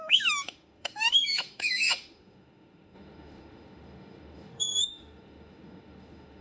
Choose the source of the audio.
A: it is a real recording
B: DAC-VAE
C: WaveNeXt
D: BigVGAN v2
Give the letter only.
B